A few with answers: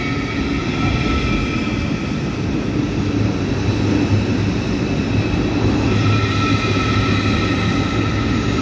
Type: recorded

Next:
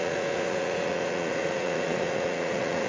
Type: remade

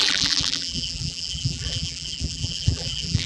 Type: remade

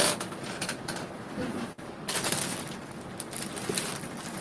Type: recorded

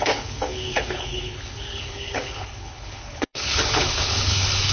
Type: remade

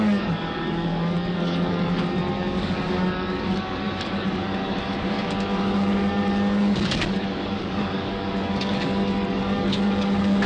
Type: remade